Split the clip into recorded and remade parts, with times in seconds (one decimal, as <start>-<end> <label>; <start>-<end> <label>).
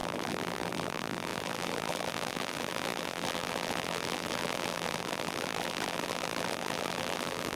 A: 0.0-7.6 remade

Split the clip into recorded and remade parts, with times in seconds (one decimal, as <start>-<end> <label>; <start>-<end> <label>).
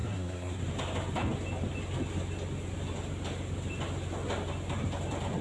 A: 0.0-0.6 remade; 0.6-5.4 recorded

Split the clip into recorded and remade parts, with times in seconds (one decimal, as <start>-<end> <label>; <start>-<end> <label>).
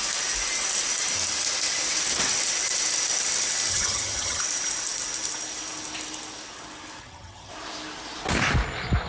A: 0.0-3.7 recorded; 3.7-4.4 remade; 4.4-7.0 recorded; 7.0-7.5 remade; 7.5-9.1 recorded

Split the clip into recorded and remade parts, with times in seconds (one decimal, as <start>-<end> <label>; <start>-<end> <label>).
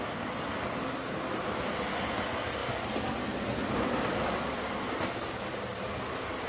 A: 0.0-6.5 recorded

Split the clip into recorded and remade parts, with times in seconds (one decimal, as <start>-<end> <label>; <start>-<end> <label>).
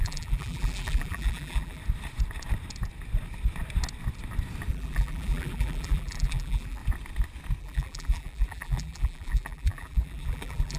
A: 0.0-1.8 remade; 1.8-4.7 recorded; 4.7-6.8 remade; 6.8-7.6 recorded; 7.6-10.8 remade